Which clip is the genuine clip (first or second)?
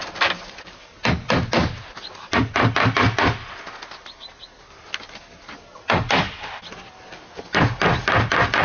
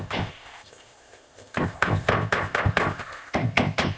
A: first